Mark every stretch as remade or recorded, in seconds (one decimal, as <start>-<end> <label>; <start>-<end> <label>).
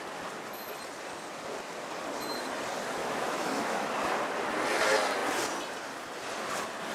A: 0.0-3.0 recorded; 3.0-3.9 remade; 3.9-6.9 recorded